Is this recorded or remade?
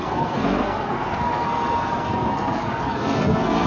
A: remade